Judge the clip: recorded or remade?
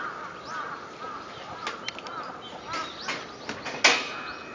recorded